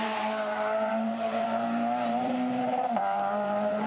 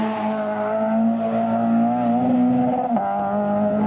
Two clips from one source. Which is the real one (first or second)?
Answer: second